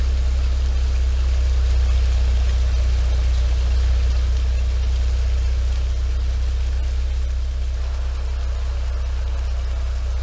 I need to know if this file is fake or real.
real